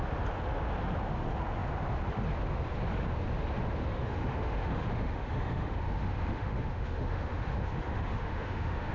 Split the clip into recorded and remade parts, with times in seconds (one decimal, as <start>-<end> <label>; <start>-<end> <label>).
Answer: 0.0-3.9 recorded; 3.9-8.9 remade

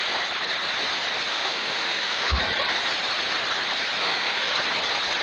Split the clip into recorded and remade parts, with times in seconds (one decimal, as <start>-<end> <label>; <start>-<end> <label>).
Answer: 0.0-1.3 recorded; 1.3-2.4 remade; 2.4-4.0 recorded; 4.0-4.5 remade; 4.5-5.2 recorded

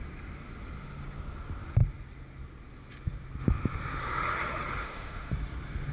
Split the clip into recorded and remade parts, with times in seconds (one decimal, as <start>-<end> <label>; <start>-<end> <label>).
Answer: 0.0-4.8 recorded; 4.8-5.3 remade; 5.3-5.9 recorded